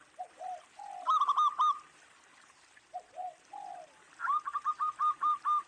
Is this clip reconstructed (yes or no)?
no